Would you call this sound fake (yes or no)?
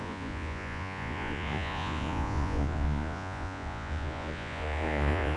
yes